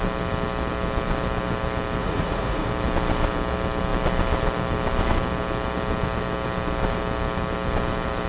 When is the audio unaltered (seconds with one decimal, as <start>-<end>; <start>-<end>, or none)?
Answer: 0.0-2.0; 2.7-8.3